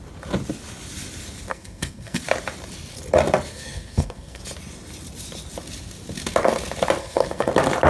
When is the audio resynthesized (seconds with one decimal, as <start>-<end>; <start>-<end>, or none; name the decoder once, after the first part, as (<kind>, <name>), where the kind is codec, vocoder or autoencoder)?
1.5-2.2 (codec, SNAC); 3.5-4.4; 7.0-7.5